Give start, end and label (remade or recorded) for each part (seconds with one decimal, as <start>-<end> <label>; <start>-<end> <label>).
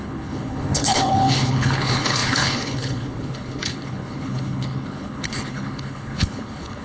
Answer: 0.0-6.8 remade